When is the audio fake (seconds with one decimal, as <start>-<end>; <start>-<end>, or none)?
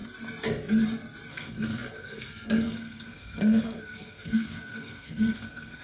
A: 1.3-5.8